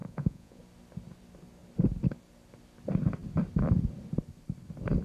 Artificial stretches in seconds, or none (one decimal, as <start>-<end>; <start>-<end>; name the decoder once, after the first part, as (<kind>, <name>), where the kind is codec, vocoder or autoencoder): 0.0-0.6 (vocoder, Vocos)